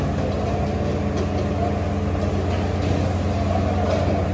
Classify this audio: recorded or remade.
recorded